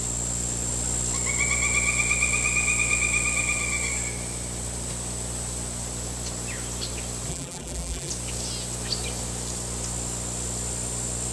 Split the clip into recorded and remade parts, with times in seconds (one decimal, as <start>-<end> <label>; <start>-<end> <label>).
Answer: 0.0-7.3 recorded; 7.3-8.1 remade; 8.1-11.3 recorded